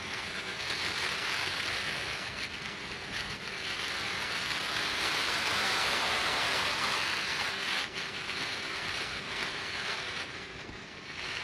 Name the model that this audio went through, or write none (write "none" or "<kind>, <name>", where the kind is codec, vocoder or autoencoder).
codec, SNAC